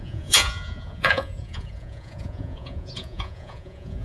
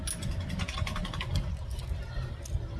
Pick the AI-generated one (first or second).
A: first